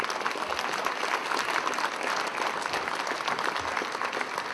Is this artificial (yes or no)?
no